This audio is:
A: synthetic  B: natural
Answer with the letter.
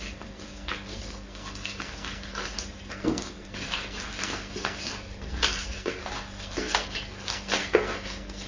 A